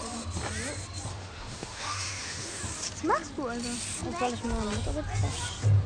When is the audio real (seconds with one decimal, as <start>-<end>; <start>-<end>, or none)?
0.0-1.1; 2.6-5.9